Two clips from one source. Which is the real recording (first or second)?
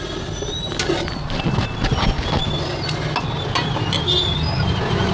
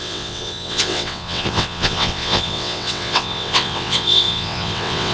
first